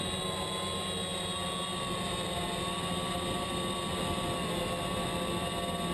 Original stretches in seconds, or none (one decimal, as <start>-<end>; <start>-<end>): 0.0-5.9